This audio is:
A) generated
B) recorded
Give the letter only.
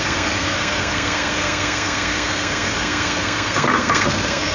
A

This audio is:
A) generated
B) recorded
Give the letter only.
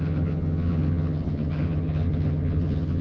A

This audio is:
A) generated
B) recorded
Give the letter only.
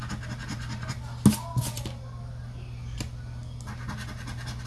B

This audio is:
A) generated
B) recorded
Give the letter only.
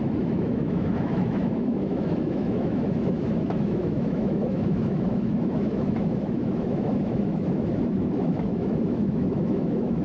A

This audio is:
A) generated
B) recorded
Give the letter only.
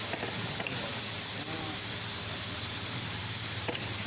A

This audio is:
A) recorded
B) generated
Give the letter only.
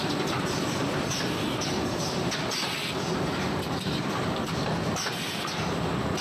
A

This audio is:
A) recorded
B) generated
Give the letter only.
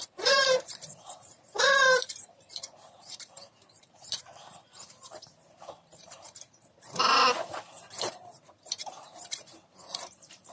B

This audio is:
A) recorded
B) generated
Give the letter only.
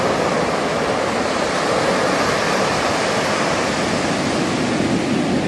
A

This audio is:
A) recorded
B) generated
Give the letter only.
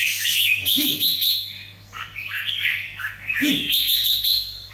B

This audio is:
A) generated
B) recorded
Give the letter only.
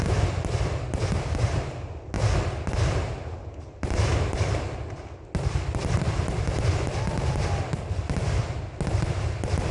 B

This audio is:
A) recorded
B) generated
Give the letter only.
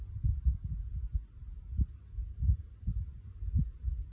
A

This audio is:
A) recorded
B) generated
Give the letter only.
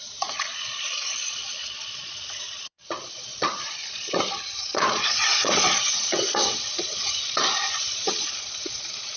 B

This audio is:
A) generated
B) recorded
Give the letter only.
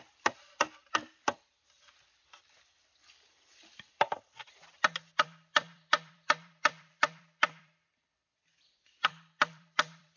A